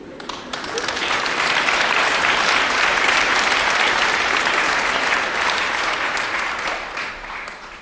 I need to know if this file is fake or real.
fake